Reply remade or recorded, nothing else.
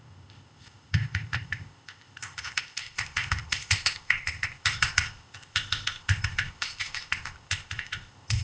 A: remade